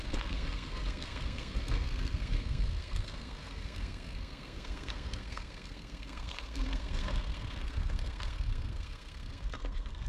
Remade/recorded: remade